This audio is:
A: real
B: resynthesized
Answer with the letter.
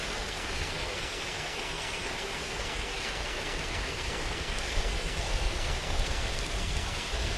B